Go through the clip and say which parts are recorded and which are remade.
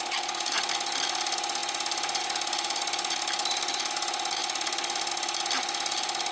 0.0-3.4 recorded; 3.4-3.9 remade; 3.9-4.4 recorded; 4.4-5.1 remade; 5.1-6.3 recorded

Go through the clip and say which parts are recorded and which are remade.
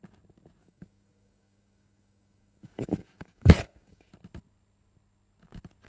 0.0-0.6 recorded; 0.6-4.1 remade; 4.1-5.9 recorded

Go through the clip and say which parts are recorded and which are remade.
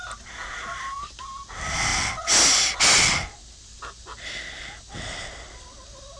0.0-6.2 recorded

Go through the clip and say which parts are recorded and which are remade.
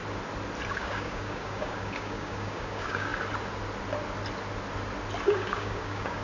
0.0-0.7 recorded; 0.7-3.1 remade; 3.1-5.2 recorded; 5.2-6.2 remade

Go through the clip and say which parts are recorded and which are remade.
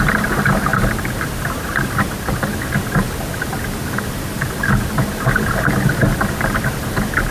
0.0-0.7 recorded; 0.7-2.1 remade; 2.1-7.3 recorded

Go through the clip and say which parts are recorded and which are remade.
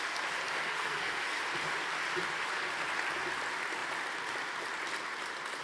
0.0-0.4 recorded; 0.4-1.4 remade; 1.4-5.6 recorded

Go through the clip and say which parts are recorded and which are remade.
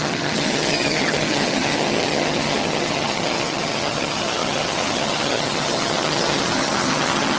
0.0-7.4 remade